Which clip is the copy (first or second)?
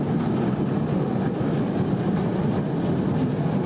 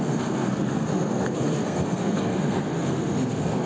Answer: second